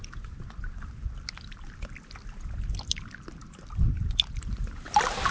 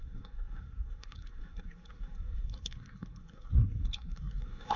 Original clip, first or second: first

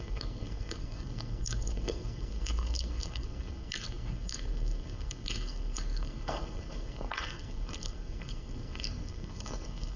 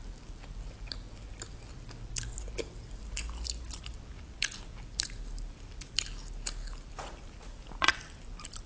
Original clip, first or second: second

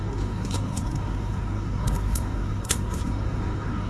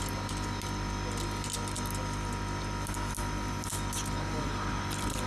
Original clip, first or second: second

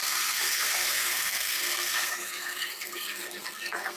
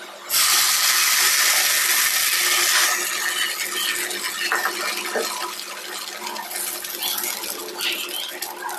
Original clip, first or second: second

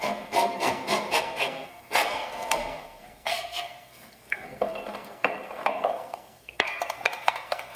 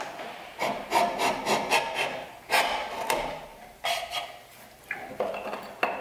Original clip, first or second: second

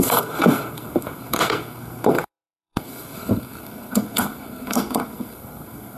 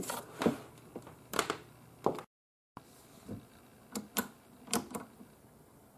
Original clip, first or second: second